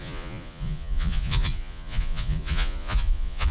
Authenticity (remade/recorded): remade